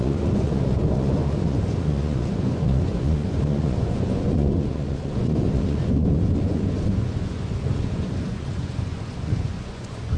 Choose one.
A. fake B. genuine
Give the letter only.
A